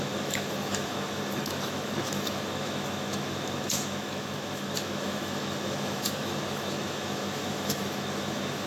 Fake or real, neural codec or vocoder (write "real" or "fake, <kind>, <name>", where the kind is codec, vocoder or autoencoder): fake, autoencoder, DAC-VAE